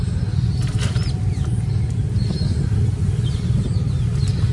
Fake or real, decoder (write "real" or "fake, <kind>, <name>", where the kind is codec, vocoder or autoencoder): real